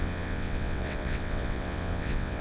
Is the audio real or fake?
fake